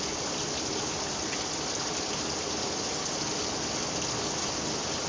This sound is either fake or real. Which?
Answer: real